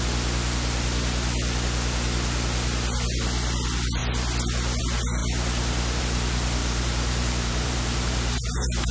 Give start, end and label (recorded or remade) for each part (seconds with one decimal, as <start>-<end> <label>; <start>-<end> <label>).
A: 0.0-6.6 recorded; 6.6-8.9 remade